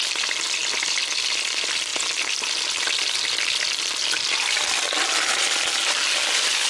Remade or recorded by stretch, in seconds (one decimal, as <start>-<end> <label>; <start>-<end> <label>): 0.0-6.7 recorded